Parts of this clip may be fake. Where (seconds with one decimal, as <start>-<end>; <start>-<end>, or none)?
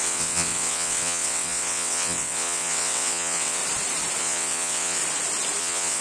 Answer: 0.0-3.6; 4.2-5.0; 5.6-6.0